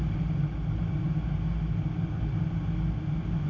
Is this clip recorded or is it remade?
recorded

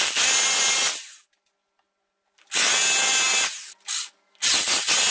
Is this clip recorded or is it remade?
recorded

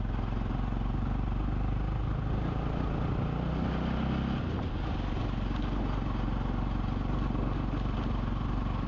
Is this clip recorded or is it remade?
recorded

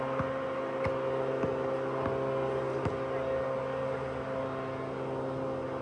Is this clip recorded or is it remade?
recorded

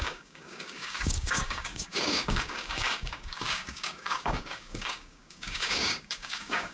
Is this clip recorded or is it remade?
remade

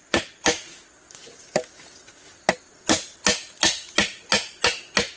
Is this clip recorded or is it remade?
recorded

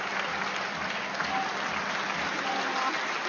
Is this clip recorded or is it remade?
recorded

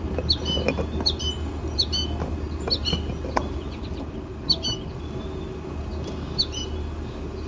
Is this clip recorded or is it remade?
recorded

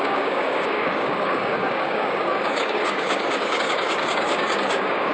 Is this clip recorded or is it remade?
remade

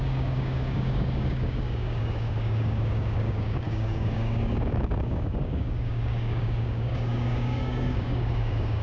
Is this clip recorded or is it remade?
remade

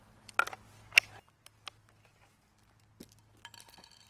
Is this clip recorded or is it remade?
recorded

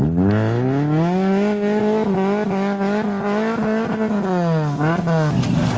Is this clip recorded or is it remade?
recorded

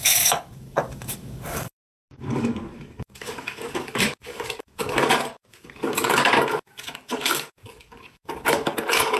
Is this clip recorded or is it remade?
remade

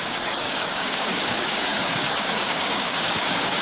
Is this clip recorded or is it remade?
remade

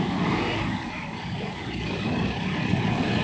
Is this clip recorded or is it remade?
remade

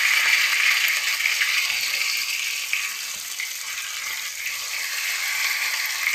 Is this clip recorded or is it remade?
recorded